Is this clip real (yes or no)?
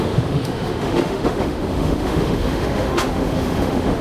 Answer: no